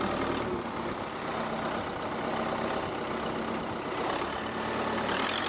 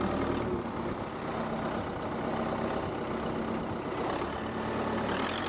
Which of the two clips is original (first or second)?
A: second